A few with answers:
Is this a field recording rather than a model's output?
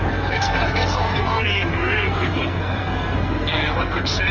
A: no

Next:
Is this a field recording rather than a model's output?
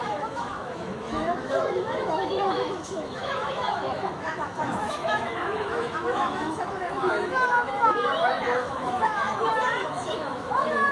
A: no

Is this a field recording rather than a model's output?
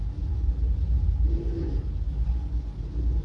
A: yes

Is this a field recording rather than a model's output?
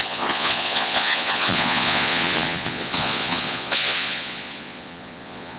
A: no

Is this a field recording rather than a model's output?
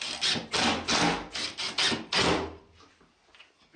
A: yes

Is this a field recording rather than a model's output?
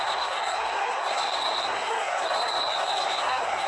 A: no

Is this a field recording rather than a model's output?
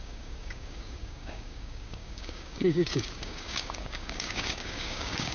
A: no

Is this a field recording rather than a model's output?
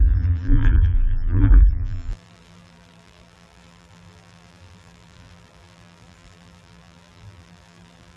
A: no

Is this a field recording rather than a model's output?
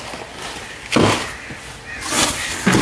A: yes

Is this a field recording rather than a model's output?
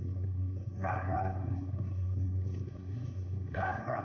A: no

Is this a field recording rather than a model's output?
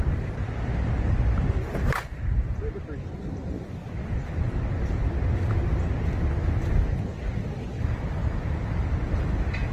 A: yes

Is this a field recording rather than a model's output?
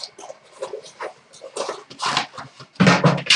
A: yes